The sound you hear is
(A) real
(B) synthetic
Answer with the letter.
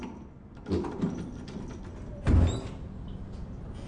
A